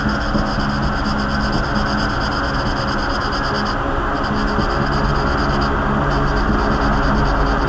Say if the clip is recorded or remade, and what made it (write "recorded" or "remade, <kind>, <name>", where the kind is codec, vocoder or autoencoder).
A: recorded